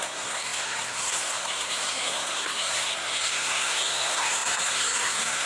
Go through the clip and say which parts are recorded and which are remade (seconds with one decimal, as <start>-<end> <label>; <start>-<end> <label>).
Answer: 0.0-5.5 remade